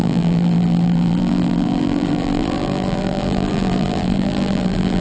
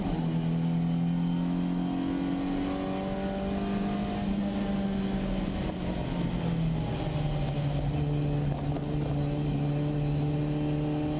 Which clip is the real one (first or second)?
second